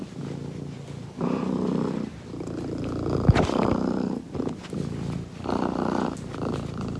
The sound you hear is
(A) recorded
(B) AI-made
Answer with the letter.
A